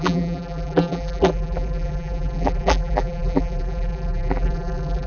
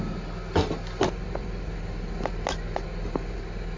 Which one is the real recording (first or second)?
second